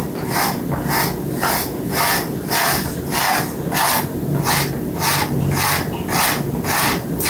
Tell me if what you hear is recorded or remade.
recorded